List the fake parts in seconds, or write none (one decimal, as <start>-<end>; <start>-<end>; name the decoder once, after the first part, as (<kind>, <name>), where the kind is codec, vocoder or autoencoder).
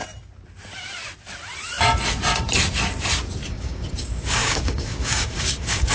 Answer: 3.5-5.9 (codec, DAC)